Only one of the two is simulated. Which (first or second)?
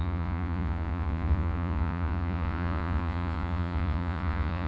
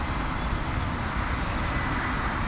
first